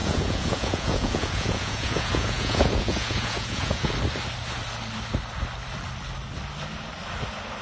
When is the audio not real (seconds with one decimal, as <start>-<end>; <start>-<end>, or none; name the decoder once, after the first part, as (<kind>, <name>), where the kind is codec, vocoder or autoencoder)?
0.0-3.9 (vocoder, Vocos)